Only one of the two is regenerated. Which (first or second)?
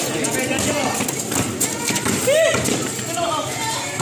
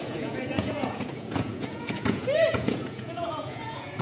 second